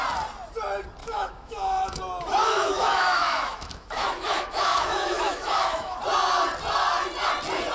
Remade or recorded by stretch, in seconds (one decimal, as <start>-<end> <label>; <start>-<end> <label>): 0.0-1.0 recorded; 1.0-2.0 remade; 2.0-2.4 recorded; 2.4-6.0 remade; 6.0-7.7 recorded